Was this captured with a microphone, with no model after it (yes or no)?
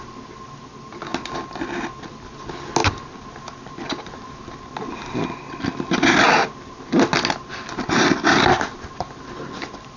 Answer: yes